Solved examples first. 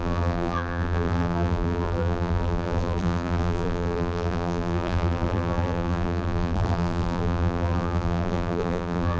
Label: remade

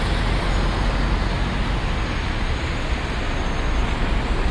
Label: recorded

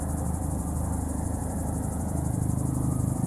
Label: remade